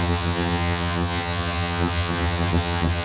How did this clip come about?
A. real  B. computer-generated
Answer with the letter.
B